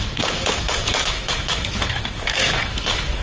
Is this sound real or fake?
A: fake